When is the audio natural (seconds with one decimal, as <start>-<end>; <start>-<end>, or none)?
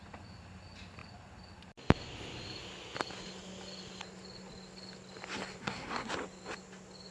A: 0.0-5.6; 6.1-7.1